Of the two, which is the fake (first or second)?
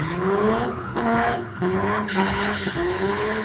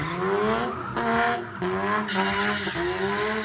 first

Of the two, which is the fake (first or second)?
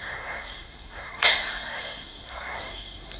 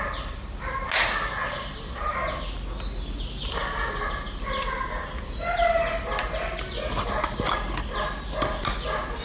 first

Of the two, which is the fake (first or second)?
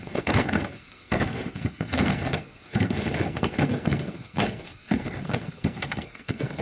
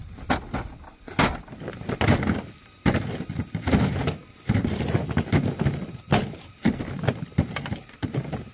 first